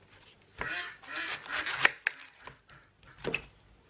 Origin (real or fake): real